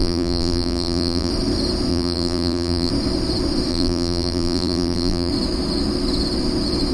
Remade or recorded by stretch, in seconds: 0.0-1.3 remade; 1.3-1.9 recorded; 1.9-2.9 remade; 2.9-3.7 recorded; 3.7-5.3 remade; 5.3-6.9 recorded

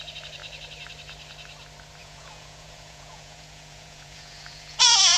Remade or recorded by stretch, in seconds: 0.0-2.0 recorded; 2.0-5.2 remade

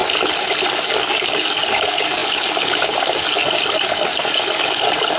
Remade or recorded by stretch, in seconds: 0.0-0.7 recorded; 0.7-5.2 remade

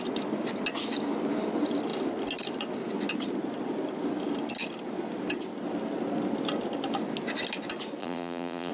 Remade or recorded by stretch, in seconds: 0.0-8.0 recorded; 8.0-8.7 remade

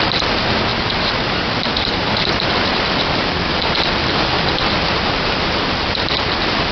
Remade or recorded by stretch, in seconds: 0.0-6.7 remade

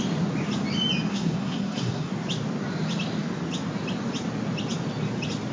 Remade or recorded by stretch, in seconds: 0.0-1.1 recorded; 1.1-2.1 remade; 2.1-5.5 recorded

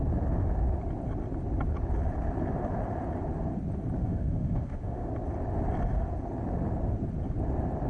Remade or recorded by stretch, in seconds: 0.0-4.0 recorded; 4.0-5.1 remade; 5.1-7.9 recorded